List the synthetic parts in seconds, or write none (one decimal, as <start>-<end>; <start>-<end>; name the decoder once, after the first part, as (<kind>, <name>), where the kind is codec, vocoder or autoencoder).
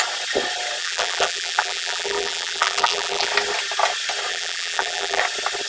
0.8-3.3 (vocoder, BigVGAN v2); 4.3-5.2